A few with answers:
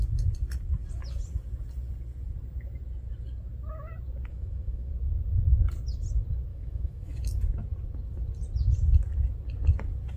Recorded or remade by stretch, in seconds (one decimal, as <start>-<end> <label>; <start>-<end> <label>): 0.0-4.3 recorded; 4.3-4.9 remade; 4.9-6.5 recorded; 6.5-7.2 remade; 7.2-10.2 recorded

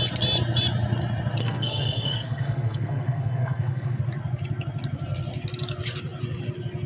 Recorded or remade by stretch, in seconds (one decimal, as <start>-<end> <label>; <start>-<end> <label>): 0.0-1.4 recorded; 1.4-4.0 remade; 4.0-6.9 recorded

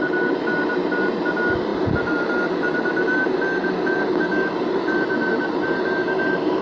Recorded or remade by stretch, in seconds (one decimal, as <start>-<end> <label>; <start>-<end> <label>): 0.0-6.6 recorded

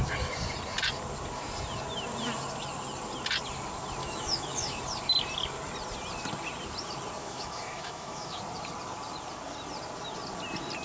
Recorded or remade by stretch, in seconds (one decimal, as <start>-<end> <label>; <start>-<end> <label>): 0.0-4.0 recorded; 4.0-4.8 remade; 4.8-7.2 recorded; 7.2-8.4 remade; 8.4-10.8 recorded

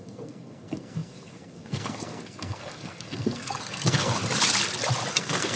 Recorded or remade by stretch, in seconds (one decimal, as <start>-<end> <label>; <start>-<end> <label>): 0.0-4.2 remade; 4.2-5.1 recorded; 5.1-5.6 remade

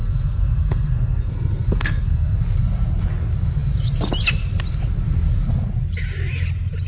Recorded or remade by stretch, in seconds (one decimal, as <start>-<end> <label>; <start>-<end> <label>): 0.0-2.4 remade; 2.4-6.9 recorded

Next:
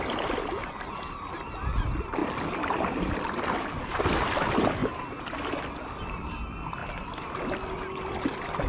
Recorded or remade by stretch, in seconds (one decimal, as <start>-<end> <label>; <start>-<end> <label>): 0.0-8.7 recorded

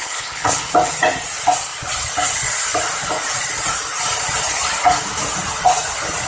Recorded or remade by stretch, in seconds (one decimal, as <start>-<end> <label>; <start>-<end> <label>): 0.0-0.7 remade; 0.7-6.3 recorded